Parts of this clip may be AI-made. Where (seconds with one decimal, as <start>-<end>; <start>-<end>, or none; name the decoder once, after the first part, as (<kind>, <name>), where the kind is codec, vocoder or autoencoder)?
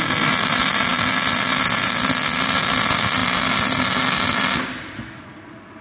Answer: none